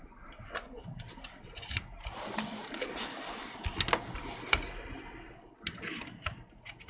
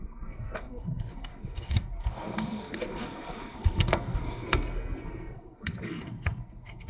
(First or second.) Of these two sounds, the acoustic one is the first